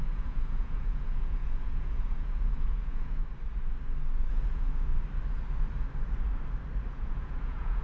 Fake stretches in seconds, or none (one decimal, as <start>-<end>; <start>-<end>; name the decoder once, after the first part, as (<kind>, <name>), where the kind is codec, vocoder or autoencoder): 0.0-3.2 (vocoder, Vocos); 4.3-4.9; 6.9-7.8